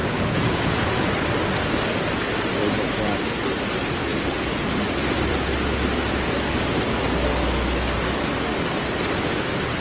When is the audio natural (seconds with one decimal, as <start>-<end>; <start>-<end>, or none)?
1.1-9.8